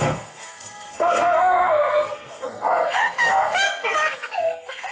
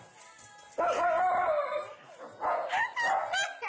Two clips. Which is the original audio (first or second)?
second